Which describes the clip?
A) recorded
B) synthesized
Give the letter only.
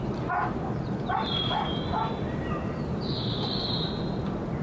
A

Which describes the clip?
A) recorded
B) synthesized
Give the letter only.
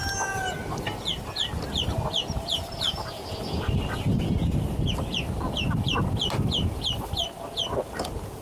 A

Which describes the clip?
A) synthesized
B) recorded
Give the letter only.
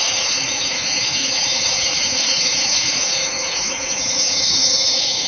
A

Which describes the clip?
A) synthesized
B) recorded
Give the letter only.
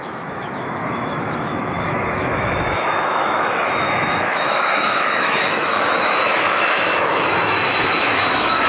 A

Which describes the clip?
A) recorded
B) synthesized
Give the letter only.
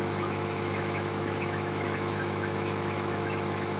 B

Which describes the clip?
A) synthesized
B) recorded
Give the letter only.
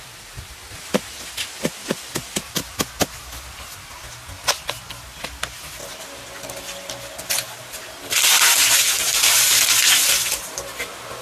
B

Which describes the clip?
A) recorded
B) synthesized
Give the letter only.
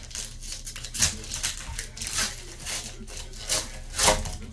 A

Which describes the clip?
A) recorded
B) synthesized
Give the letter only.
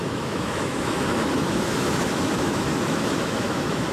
B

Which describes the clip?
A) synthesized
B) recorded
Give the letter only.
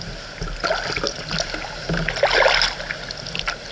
B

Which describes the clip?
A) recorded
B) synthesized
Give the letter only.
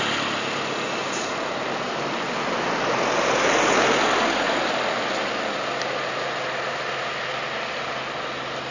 A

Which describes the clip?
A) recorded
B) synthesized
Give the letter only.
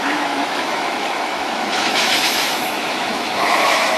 B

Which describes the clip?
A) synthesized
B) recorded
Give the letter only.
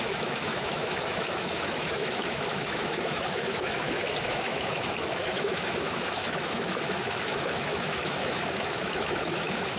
A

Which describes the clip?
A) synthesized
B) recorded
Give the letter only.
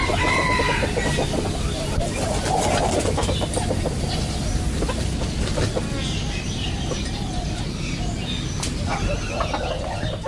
B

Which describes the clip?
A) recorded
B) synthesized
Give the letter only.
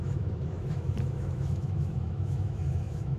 B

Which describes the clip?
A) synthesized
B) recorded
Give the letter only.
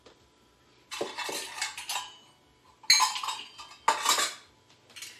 B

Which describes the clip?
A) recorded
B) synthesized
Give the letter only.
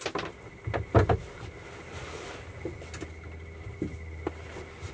A